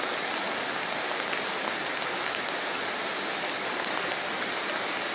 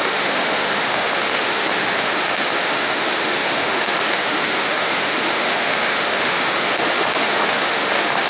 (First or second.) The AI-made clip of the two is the second